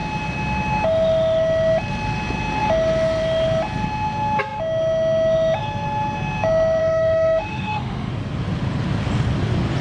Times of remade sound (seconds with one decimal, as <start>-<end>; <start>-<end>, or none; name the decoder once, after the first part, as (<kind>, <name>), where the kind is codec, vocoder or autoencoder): 6.8-8.1 (autoencoder, DAC-VAE)